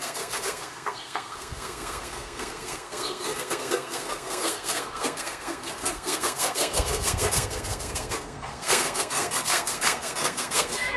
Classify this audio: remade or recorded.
remade